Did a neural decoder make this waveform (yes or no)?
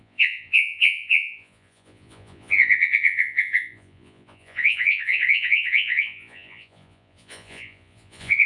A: yes